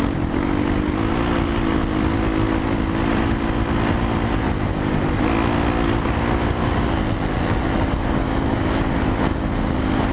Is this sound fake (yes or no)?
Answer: no